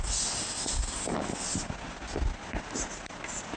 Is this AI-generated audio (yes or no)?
no